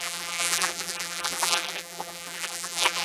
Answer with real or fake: fake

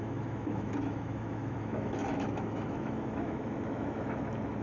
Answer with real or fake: fake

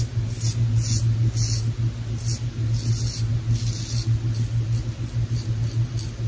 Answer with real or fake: real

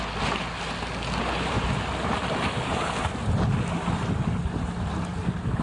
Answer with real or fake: real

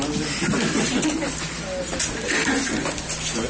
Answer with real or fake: real